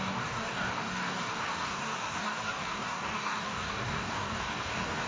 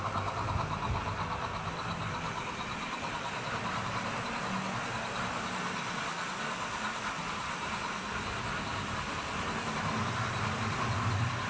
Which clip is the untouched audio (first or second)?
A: second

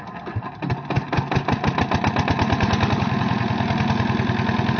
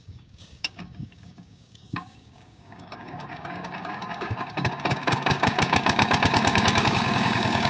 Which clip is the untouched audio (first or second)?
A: first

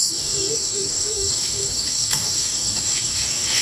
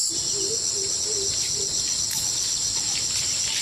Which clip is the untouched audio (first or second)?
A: second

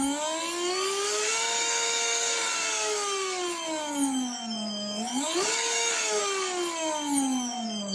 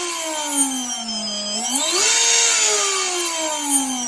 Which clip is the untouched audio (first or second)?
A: second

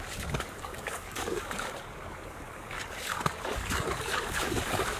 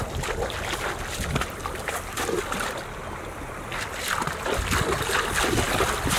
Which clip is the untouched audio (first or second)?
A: second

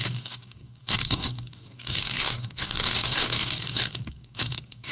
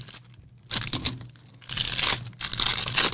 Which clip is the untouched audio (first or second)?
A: second